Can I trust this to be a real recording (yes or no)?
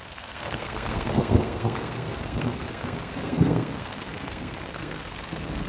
no